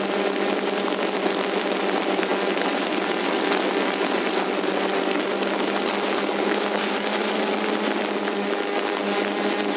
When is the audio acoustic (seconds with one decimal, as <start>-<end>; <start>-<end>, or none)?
0.0-9.8